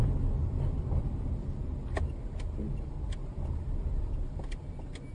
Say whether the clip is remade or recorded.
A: recorded